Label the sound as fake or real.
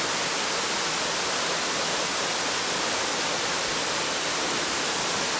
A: real